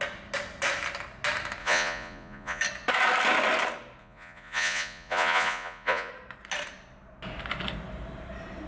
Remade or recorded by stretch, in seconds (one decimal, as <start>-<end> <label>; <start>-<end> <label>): 0.0-1.6 recorded; 1.6-2.6 remade; 2.6-4.0 recorded; 4.0-6.1 remade; 6.1-8.7 recorded